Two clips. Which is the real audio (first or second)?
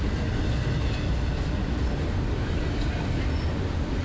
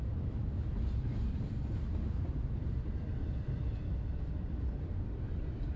first